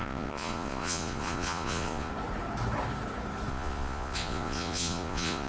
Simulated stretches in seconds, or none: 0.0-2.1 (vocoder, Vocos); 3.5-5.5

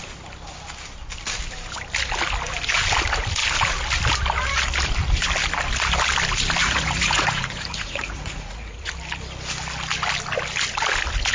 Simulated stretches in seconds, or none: 6.6-8.9 (vocoder, Vocos)

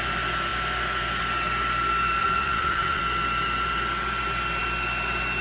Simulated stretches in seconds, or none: 2.2-3.0 (vocoder, Vocos)

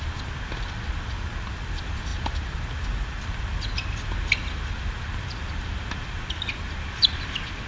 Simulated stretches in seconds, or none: none

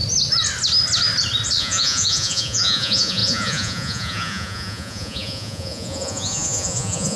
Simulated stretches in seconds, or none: 1.6-7.2 (vocoder, Vocos)

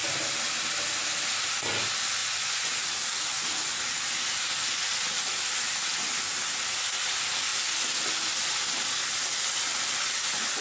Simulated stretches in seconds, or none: 2.2-2.7 (vocoder, Vocos)

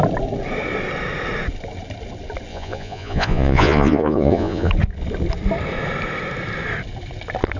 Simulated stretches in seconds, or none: 2.5-4.7 (vocoder, Vocos)